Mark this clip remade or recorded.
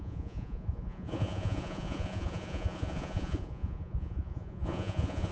remade